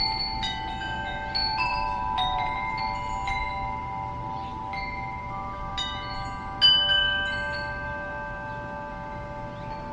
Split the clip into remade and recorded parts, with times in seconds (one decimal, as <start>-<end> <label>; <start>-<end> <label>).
0.0-1.4 recorded; 1.4-2.8 remade; 2.8-9.9 recorded